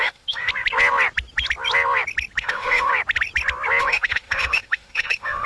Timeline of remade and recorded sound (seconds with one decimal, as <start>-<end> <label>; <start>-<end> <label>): 0.0-0.5 remade; 0.5-2.4 recorded; 2.4-2.9 remade; 2.9-3.8 recorded; 3.8-5.5 remade